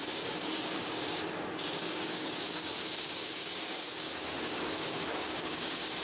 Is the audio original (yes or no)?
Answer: no